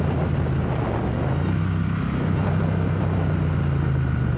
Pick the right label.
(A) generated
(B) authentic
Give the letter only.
B